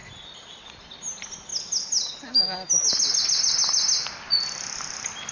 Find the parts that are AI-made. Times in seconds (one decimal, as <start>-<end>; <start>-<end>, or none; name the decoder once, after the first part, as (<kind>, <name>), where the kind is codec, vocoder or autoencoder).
none